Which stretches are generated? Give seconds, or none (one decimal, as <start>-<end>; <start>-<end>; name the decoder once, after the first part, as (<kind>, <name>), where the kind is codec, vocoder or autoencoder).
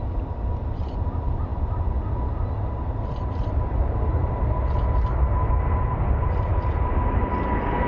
none